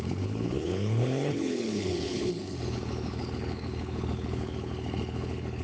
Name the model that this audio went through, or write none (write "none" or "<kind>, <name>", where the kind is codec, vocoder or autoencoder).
codec, HILCodec